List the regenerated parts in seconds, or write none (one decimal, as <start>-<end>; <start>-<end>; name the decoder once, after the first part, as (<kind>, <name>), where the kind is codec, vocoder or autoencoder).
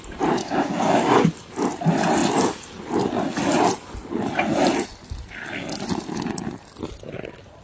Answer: 0.4-1.3 (codec, DAC)